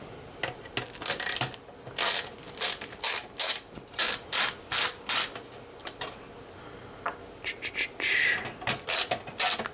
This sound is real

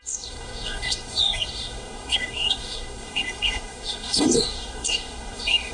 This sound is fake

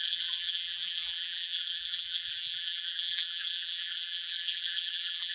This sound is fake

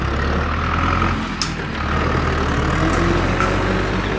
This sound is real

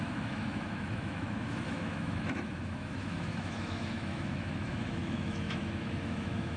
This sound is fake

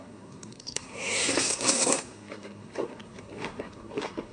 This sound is fake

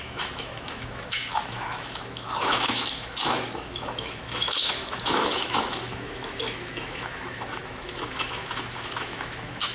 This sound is fake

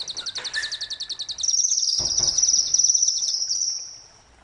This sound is real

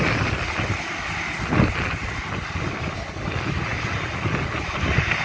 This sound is real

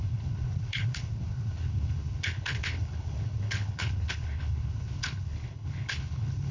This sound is fake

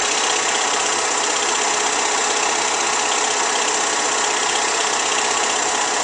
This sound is real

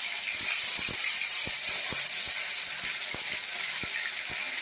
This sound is real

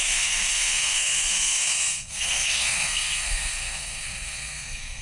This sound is fake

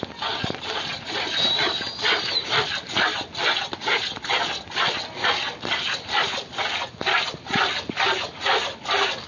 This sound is real